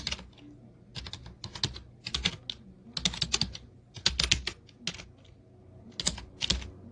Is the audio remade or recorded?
recorded